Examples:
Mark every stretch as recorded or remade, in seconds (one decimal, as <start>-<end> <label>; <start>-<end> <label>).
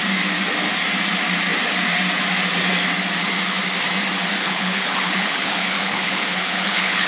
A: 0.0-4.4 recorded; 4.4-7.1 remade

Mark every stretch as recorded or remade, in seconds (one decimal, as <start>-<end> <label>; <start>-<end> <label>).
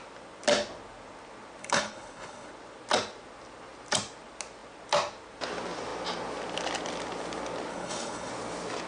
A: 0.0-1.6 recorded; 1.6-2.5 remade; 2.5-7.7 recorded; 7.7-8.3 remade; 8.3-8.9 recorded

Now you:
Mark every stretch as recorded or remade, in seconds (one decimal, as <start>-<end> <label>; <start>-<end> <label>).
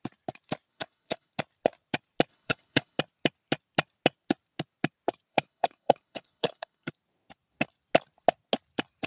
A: 0.0-0.7 recorded; 0.7-1.3 remade; 1.3-2.3 recorded; 2.3-3.0 remade; 3.0-5.3 recorded; 5.3-6.9 remade; 6.9-9.1 recorded